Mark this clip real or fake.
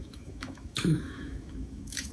fake